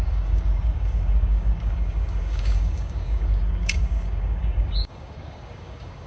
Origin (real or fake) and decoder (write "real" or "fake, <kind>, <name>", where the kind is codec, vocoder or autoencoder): fake, codec, DAC